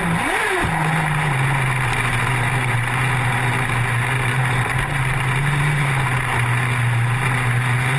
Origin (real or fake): real